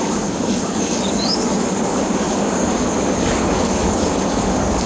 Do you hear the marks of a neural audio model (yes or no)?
yes